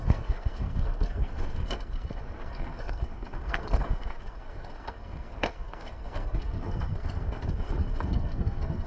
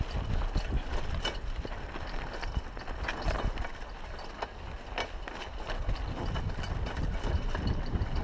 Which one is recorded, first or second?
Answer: second